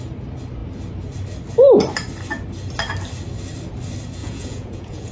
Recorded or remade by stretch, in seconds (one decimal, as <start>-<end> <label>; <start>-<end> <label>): 0.0-4.2 recorded; 4.2-5.1 remade